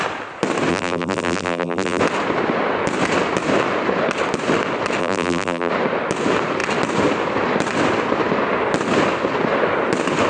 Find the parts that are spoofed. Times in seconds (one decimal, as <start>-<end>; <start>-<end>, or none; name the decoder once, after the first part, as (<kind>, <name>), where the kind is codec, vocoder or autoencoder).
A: 0.7-2.0 (vocoder, BigVGAN v2); 5.0-5.7